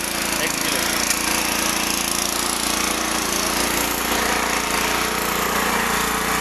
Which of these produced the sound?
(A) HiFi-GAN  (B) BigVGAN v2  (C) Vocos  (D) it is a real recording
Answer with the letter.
D